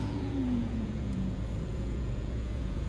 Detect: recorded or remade remade